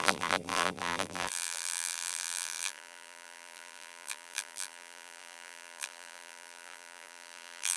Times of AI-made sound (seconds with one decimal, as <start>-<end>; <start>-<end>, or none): 0.0-7.8